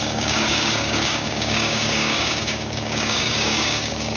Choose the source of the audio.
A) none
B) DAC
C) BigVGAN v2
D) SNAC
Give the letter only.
B